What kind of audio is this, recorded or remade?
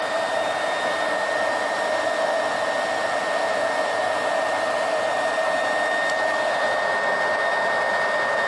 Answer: recorded